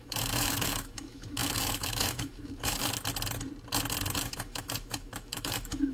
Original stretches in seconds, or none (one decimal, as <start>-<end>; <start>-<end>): 2.8-4.2